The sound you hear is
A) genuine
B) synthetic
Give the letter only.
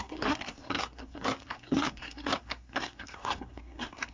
B